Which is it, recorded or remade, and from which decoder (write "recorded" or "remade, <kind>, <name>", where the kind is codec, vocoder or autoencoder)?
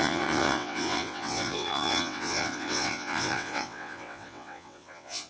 remade, vocoder, WaveNeXt